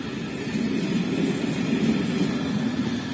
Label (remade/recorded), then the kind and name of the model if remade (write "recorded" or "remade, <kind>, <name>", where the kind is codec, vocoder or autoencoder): recorded